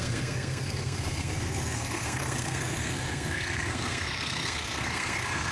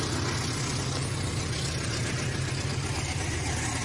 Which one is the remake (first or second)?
first